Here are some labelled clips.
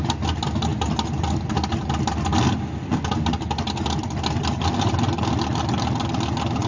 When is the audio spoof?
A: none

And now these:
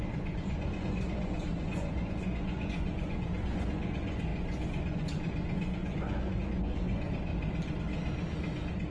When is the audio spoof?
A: 0.0-7.3 (vocoder, Vocos)

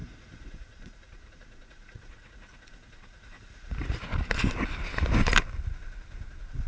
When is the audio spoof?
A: 0.0-4.0 (vocoder, Vocos)

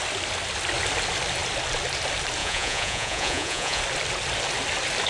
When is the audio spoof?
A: 2.4-3.8 (vocoder, Vocos)

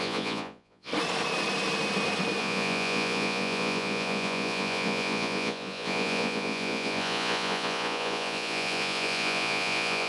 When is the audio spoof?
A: 0.0-0.9 (vocoder, Vocos); 2.4-10.1

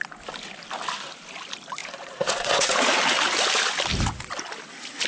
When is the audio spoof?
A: 1.8-3.0 (vocoder, Vocos)

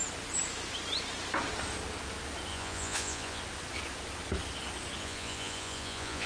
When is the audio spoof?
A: 2.5-3.4 (vocoder, Vocos); 5.0-6.3